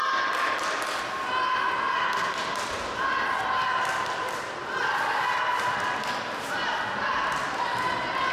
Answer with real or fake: real